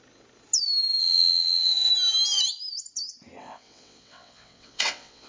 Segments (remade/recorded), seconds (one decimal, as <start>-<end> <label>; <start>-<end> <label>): 0.0-1.0 recorded; 1.0-1.9 remade; 1.9-3.4 recorded; 3.4-5.3 remade